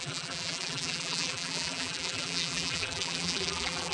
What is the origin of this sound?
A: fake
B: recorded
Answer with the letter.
A